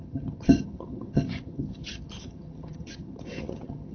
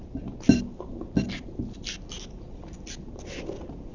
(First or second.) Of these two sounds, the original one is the second